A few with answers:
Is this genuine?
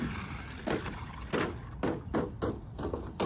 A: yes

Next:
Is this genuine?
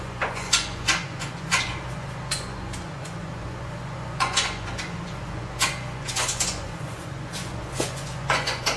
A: no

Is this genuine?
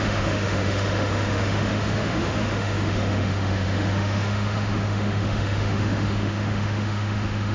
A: no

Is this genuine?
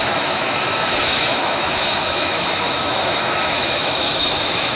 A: no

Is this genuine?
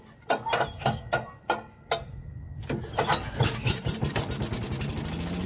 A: yes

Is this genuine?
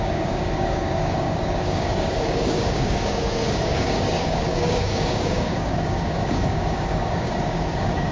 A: no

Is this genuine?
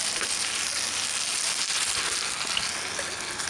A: yes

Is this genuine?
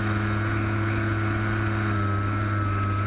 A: yes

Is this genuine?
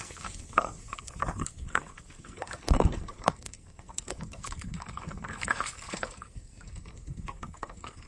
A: no